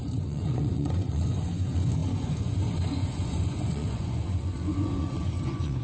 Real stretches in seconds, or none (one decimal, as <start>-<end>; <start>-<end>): none

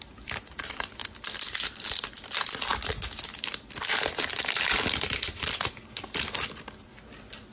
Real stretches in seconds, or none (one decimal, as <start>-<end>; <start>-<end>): 0.0-7.5